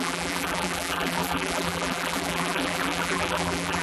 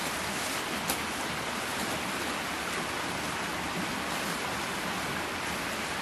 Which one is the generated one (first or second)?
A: first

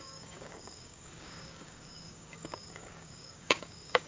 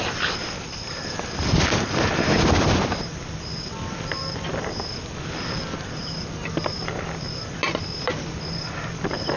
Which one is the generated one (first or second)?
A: first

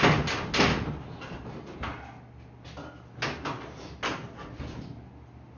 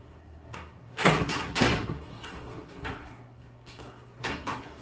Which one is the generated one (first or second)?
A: second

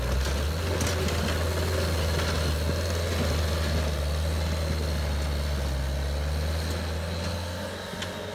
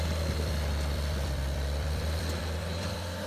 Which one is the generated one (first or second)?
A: second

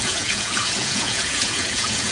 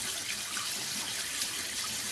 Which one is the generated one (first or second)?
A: first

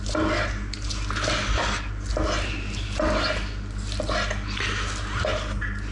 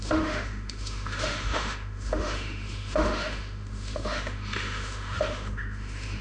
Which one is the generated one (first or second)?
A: second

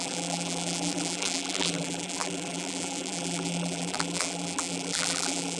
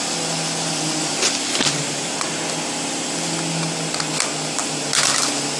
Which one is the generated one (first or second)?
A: first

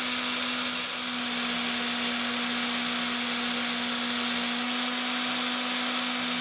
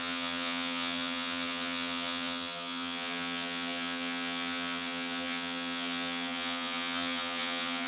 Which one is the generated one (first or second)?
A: second